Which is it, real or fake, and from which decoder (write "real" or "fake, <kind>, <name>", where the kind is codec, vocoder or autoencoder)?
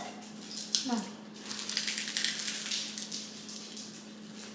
real